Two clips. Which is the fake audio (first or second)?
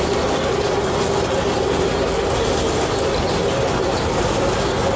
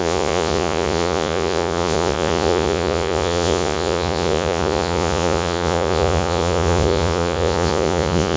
second